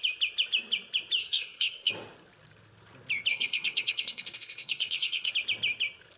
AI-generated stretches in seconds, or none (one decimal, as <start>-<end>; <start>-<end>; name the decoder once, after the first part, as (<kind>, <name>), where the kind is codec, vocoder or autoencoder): 1.2-1.9 (codec, SNAC); 3.3-5.3

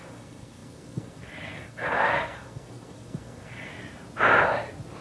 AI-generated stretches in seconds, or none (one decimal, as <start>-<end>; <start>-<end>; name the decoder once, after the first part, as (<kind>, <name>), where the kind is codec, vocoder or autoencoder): 0.0-3.7 (codec, SNAC)

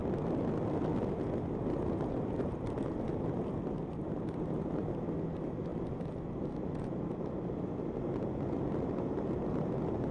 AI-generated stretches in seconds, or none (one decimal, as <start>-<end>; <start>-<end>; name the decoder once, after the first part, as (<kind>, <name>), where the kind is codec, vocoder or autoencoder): none

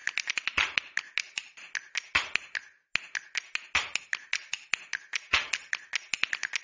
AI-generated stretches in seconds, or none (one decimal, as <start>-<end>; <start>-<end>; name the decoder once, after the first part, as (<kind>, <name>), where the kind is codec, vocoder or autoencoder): none

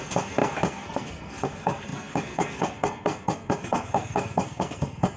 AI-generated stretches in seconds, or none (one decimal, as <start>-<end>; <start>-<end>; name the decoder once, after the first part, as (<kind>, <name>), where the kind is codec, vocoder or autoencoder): 0.0-5.2 (codec, SNAC)

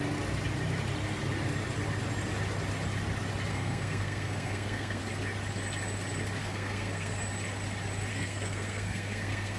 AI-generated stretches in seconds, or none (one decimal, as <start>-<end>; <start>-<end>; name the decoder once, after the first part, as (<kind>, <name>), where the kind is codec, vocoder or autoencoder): 3.5-5.0 (codec, SNAC); 6.4-7.2; 8.1-9.6

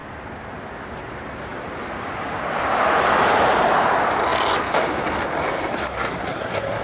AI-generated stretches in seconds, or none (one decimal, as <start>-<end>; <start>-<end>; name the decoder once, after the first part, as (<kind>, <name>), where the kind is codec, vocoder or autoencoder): 5.7-6.8 (codec, SNAC)

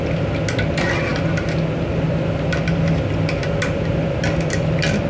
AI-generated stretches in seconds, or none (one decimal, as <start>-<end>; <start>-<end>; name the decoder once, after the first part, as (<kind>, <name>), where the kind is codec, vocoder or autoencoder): none